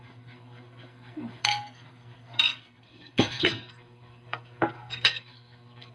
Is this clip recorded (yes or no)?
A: no